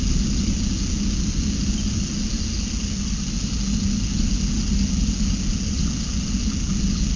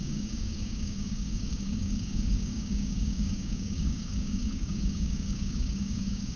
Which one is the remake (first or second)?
second